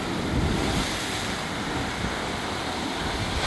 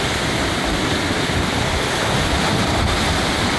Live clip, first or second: first